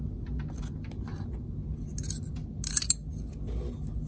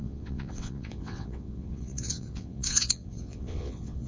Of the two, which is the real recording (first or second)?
first